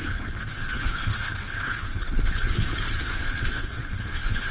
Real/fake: fake